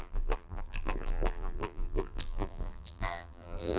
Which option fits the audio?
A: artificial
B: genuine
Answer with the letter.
A